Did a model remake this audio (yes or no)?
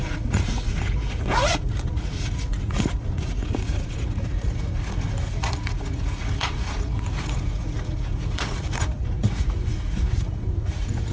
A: yes